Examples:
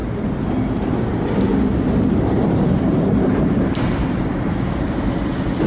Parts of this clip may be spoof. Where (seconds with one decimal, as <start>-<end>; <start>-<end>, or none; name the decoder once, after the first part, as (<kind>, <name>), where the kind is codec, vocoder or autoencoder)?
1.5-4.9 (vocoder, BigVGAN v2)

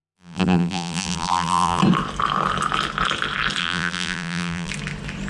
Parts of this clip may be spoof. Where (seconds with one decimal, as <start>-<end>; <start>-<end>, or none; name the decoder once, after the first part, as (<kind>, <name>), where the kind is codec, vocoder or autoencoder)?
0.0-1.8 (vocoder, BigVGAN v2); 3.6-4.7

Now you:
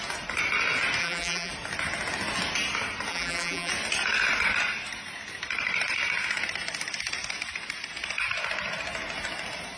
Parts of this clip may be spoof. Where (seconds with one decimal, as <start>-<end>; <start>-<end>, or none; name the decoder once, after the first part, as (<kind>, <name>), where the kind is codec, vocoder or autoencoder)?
1.0-1.5 (vocoder, BigVGAN v2); 3.1-3.7

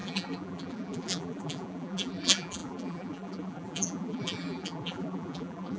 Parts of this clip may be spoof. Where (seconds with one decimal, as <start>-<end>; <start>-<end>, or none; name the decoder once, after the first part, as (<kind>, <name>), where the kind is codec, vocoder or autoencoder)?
0.0-5.8 (vocoder, BigVGAN v2)